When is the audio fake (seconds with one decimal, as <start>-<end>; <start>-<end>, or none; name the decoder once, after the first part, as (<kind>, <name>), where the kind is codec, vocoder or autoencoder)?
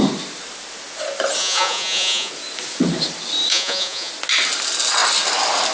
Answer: 1.4-2.3 (vocoder, Vocos); 3.5-4.1